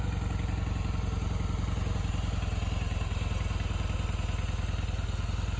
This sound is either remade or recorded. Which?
recorded